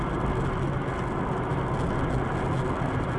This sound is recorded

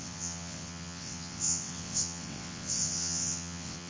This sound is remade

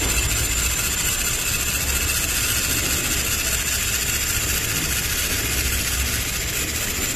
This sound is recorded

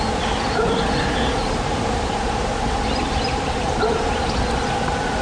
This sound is recorded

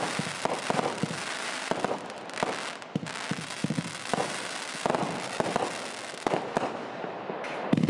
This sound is recorded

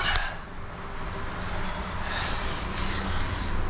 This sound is recorded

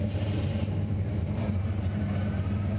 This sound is recorded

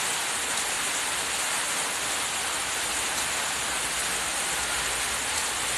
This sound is recorded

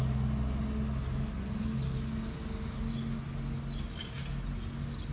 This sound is recorded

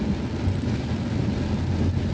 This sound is recorded